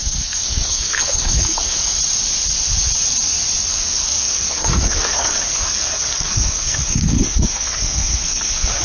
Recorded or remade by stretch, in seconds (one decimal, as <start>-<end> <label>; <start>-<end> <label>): 0.0-1.9 remade; 1.9-3.7 recorded; 3.7-8.8 remade